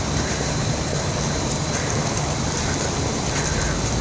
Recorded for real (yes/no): yes